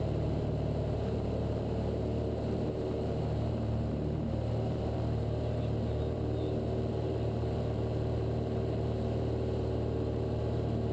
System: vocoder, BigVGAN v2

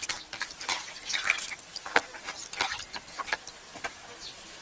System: none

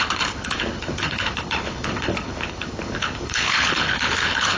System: codec, HILCodec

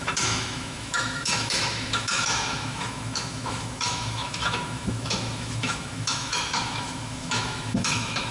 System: autoencoder, DAC-VAE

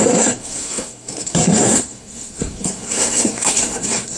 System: codec, SNAC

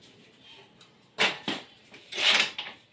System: vocoder, BigVGAN v2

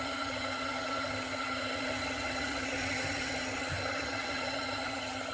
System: vocoder, HiFi-GAN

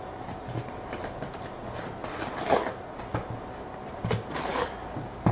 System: none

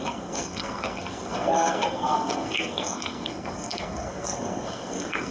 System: codec, SNAC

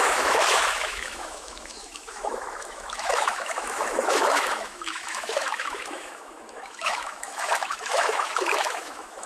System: autoencoder, DAC-VAE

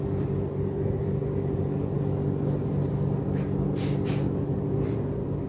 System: none